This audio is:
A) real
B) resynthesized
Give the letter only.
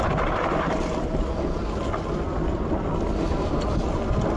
A